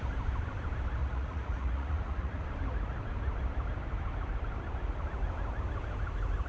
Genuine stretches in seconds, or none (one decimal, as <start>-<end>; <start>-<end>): 0.0-1.0; 2.4-6.5